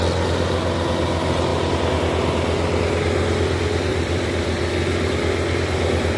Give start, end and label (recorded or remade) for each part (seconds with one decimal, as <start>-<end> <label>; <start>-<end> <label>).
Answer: 0.0-3.9 recorded; 3.9-4.7 remade; 4.7-6.2 recorded